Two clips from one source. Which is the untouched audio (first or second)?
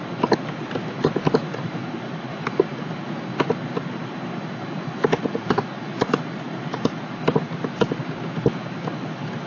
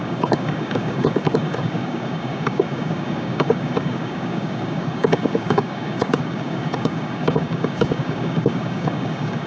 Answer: first